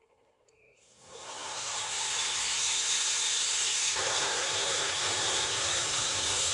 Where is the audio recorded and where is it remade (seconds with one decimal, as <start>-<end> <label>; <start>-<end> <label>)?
0.0-6.5 remade